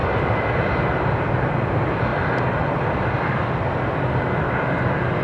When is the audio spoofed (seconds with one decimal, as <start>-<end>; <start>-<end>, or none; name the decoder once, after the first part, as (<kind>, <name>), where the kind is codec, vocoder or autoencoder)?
0.0-0.6 (vocoder, BigVGAN v2)